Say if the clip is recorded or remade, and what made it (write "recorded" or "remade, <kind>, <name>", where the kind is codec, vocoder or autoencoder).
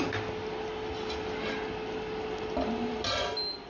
recorded